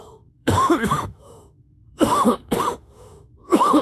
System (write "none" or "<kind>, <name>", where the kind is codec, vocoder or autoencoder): autoencoder, DAC-VAE